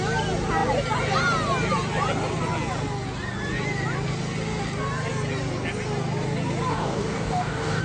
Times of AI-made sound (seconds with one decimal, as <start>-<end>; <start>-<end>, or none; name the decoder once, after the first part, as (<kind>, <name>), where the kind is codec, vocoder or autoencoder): 6.7-7.8 (codec, DAC)